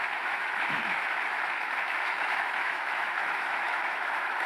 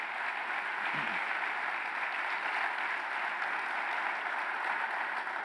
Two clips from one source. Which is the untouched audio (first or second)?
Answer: second